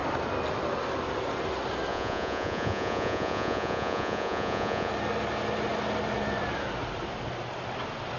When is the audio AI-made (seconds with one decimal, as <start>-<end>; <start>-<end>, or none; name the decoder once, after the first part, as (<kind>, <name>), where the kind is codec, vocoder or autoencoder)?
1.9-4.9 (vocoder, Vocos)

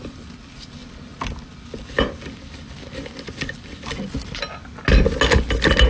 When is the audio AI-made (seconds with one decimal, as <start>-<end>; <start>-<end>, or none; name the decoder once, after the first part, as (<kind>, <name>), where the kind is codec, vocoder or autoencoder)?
none

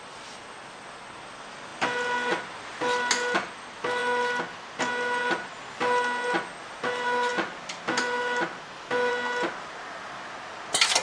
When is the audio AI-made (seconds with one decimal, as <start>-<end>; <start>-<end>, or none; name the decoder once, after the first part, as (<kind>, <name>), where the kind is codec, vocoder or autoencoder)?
none